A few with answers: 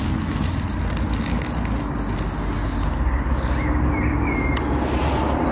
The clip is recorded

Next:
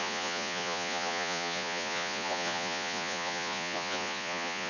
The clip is remade